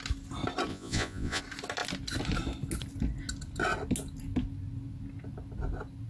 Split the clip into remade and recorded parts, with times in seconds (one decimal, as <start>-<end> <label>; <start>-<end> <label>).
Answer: 0.0-0.7 recorded; 0.7-1.4 remade; 1.4-6.1 recorded